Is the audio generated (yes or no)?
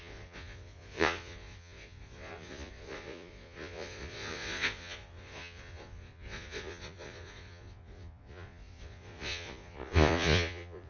yes